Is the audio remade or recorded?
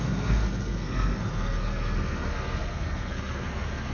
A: remade